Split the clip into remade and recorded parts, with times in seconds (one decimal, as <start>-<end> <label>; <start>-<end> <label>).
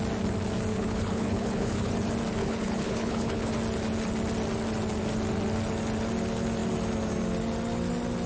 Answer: 0.0-0.7 recorded; 0.7-1.9 remade; 1.9-2.4 recorded; 2.4-3.5 remade; 3.5-8.3 recorded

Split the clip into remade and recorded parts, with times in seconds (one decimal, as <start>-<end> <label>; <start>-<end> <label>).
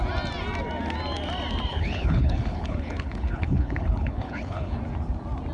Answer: 0.0-1.7 recorded; 1.7-4.8 remade; 4.8-5.5 recorded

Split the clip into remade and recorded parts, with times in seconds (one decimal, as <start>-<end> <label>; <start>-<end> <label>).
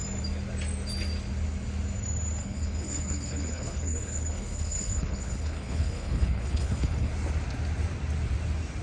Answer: 0.0-2.4 recorded; 2.4-7.1 remade; 7.1-8.8 recorded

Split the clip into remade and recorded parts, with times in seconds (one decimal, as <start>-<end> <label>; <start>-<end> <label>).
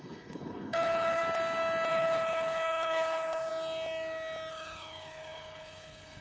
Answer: 0.0-1.2 remade; 1.2-1.9 recorded; 1.9-3.5 remade; 3.5-4.5 recorded; 4.5-6.2 remade